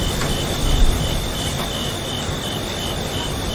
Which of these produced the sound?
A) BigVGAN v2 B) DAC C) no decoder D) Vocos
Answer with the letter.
C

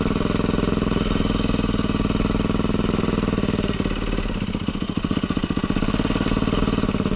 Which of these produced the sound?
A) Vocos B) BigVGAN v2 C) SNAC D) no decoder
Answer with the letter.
D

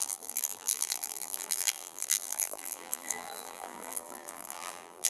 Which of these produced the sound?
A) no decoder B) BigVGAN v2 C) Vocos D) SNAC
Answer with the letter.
B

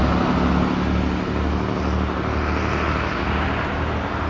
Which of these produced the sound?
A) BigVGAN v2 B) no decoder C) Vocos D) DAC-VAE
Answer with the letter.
B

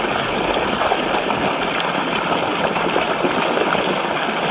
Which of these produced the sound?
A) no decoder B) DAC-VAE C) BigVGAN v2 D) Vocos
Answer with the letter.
A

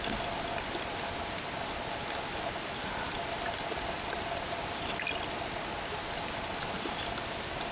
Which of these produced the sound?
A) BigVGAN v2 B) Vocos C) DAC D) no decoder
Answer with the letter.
D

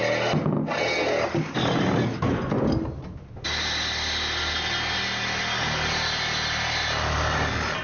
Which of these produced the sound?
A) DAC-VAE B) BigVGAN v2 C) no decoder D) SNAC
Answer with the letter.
C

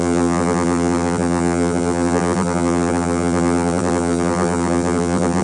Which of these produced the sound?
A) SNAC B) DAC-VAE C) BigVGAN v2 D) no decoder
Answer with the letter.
C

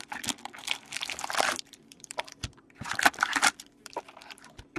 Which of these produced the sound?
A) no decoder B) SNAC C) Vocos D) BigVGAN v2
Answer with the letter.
D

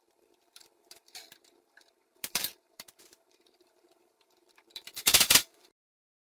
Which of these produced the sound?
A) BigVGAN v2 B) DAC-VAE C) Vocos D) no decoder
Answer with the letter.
A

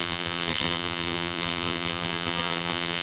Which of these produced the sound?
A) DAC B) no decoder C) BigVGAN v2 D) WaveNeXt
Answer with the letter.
C